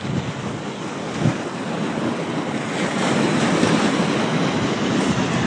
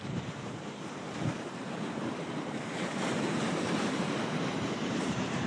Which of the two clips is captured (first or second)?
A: first